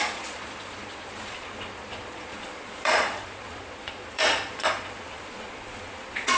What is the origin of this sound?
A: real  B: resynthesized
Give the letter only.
B